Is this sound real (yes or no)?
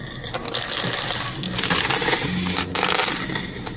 yes